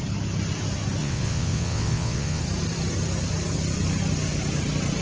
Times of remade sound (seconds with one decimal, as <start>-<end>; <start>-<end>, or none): 1.0-2.4